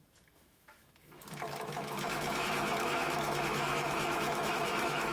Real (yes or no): no